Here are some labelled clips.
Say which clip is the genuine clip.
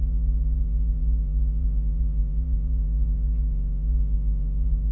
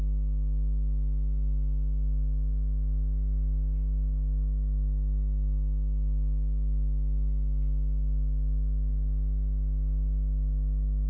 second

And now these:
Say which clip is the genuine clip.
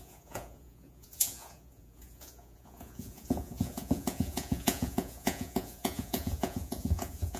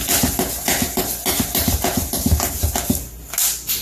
second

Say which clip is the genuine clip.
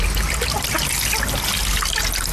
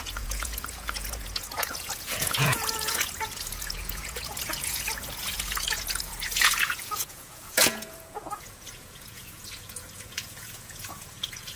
first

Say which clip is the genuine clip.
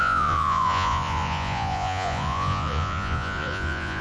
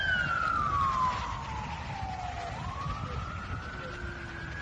second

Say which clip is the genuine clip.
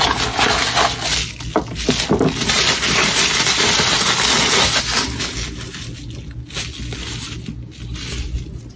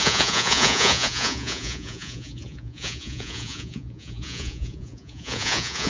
first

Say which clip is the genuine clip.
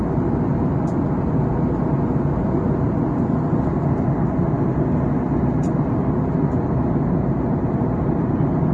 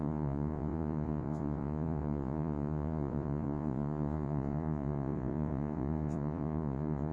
first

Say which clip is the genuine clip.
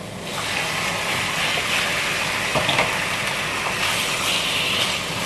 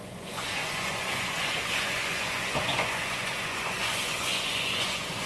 first